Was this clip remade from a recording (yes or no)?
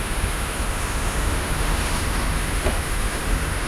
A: yes